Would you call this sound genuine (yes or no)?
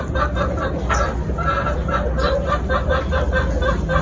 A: yes